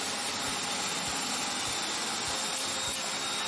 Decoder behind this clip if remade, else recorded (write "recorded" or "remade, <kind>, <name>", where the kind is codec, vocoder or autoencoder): recorded